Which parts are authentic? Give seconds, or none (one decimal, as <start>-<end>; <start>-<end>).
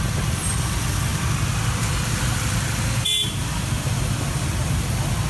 0.0-5.3